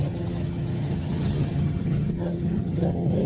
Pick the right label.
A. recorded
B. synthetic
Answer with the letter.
B